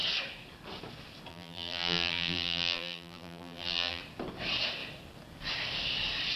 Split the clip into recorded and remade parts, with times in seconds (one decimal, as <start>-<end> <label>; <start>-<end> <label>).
0.0-1.3 recorded; 1.3-4.0 remade; 4.0-6.4 recorded